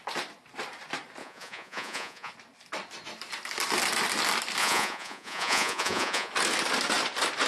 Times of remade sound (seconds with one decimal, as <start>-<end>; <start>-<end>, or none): 1.2-2.3; 4.6-6.3